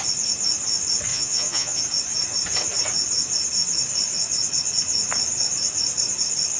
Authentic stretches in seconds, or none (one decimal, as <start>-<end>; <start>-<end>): 0.0-1.1; 1.8-6.6